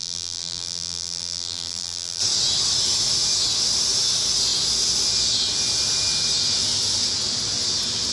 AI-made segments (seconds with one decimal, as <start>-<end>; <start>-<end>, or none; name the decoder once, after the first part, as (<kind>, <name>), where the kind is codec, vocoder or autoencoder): 0.0-2.2 (vocoder, BigVGAN v2)